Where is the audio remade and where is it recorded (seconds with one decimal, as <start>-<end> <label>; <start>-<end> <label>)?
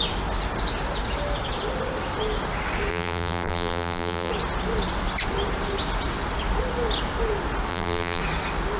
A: 0.0-2.9 recorded; 2.9-4.3 remade; 4.3-7.7 recorded; 7.7-8.2 remade; 8.2-8.8 recorded